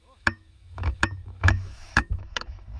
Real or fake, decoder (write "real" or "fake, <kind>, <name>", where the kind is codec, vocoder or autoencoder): fake, autoencoder, DAC-VAE